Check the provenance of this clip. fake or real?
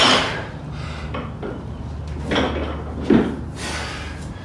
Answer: real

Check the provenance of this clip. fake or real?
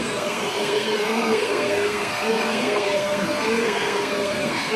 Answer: fake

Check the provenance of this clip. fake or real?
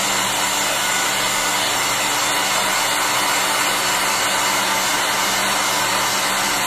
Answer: real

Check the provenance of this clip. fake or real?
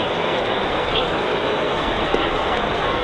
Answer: fake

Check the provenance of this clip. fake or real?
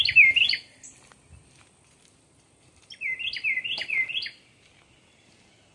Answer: real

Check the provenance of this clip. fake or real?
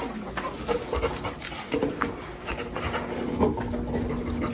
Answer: real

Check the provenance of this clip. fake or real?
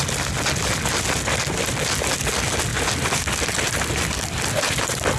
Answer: real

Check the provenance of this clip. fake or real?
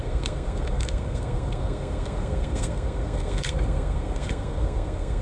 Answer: fake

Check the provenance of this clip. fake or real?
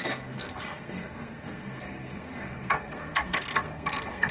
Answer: fake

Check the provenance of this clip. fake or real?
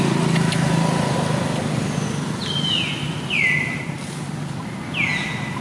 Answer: real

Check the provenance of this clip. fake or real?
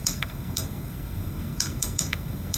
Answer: fake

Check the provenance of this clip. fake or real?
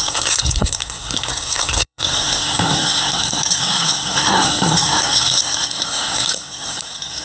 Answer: fake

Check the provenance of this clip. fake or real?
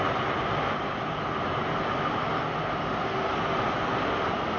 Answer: real